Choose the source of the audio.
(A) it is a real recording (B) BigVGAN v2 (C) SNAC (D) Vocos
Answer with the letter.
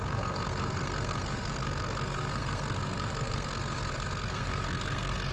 C